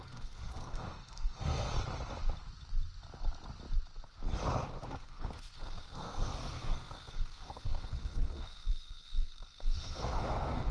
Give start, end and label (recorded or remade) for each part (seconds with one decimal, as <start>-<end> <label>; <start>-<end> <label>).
0.0-1.7 remade; 1.7-4.8 recorded; 4.8-10.7 remade